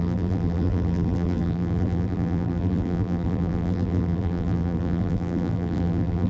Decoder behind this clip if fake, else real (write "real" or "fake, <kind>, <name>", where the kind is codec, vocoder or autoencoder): fake, vocoder, BigVGAN v2